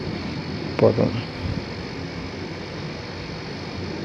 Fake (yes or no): no